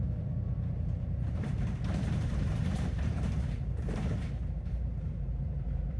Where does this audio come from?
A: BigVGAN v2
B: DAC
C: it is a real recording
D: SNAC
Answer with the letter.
A